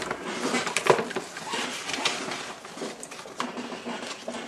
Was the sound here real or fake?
real